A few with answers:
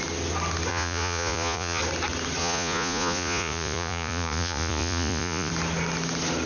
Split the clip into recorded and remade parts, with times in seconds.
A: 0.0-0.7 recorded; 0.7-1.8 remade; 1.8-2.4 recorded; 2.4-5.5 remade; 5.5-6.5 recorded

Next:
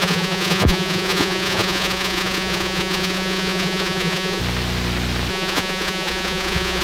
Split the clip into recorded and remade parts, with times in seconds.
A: 0.0-4.4 remade; 4.4-5.3 recorded; 5.3-6.8 remade

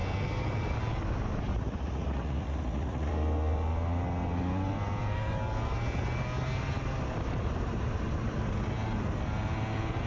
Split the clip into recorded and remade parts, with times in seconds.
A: 0.0-1.5 recorded; 1.5-3.1 remade; 3.1-10.1 recorded

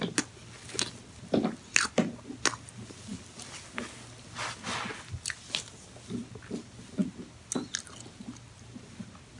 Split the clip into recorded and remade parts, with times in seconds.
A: 0.0-9.4 recorded

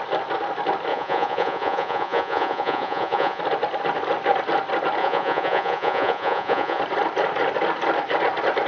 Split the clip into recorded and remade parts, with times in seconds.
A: 0.0-0.9 recorded; 0.9-3.4 remade; 3.4-5.0 recorded; 5.0-6.8 remade; 6.8-8.7 recorded

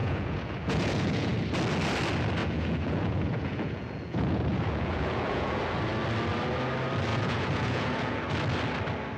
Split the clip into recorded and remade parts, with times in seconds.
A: 0.0-1.3 remade; 1.3-2.4 recorded; 2.4-5.6 remade; 5.6-7.1 recorded; 7.1-8.2 remade; 8.2-9.2 recorded

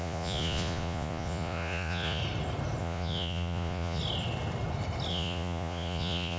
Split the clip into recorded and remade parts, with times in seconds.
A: 0.0-2.2 remade; 2.2-2.8 recorded; 2.8-4.0 remade; 4.0-5.1 recorded; 5.1-6.4 remade

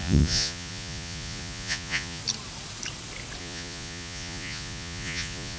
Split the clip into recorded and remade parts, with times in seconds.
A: 0.0-2.2 remade; 2.2-3.4 recorded; 3.4-5.6 remade